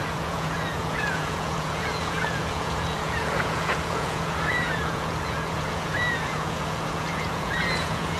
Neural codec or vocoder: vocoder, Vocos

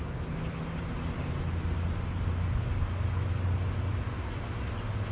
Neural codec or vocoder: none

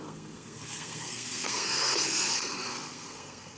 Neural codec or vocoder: codec, SNAC